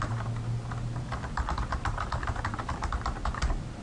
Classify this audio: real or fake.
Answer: real